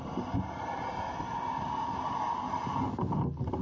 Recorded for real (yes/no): yes